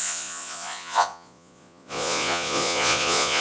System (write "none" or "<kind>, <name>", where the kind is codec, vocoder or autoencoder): vocoder, Vocos